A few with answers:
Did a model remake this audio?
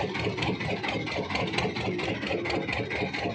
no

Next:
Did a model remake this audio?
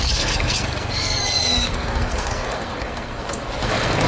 yes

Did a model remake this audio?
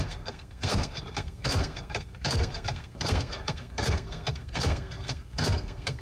yes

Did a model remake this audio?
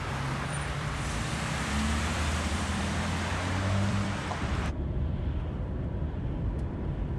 yes